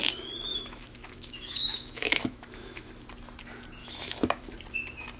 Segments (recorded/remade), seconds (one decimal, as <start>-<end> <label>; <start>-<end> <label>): 0.0-0.5 recorded; 0.5-2.9 remade; 2.9-3.8 recorded; 3.8-4.6 remade; 4.6-5.2 recorded